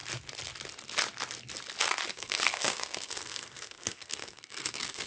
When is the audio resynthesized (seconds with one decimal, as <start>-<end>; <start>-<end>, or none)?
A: 2.1-5.1